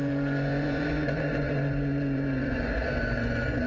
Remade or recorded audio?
remade